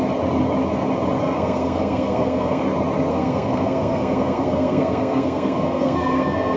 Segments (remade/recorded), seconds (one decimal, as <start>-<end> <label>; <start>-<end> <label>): 0.0-1.2 recorded; 1.2-2.6 remade; 2.6-3.1 recorded; 3.1-6.6 remade